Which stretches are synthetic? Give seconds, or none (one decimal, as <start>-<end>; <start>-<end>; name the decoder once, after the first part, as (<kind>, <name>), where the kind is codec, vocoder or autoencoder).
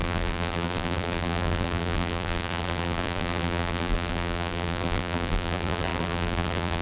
0.0-6.8 (vocoder, BigVGAN v2)